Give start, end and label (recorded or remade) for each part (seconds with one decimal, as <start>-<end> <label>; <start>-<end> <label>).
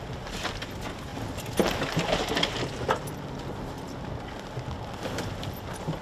0.0-6.0 recorded